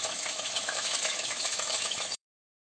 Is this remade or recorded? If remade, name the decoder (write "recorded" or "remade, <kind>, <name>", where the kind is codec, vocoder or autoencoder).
remade, autoencoder, DAC-VAE